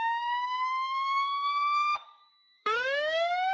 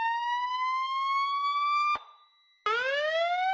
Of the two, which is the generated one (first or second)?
first